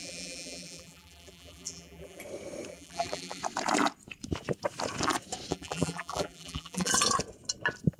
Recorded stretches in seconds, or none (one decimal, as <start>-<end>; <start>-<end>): 2.2-2.7; 3.4-5.5; 6.9-8.0